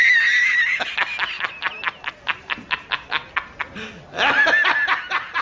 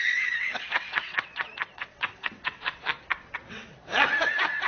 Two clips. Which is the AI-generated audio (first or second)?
second